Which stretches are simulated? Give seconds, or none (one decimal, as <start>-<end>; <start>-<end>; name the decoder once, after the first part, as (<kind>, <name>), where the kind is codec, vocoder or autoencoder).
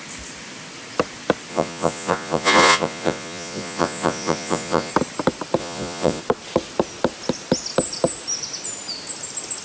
1.5-4.9 (vocoder, Vocos); 5.6-6.2